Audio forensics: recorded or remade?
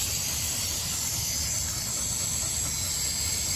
recorded